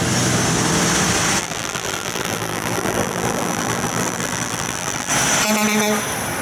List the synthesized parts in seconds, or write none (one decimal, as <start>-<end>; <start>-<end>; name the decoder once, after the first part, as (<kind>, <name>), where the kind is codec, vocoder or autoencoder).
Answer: 1.4-5.1 (vocoder, BigVGAN v2)